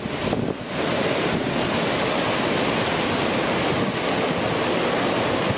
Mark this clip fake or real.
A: real